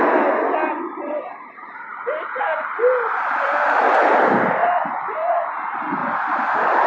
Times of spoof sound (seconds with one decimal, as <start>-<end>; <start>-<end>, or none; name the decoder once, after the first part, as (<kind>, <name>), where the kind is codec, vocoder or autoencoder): 4.6-5.5 (vocoder, Vocos)